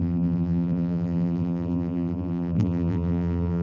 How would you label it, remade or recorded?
remade